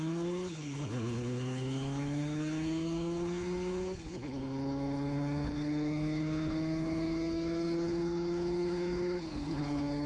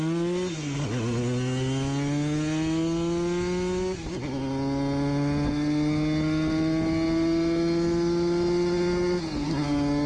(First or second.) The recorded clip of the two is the second